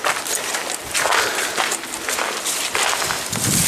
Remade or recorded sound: recorded